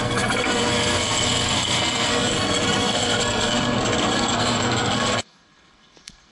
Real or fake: fake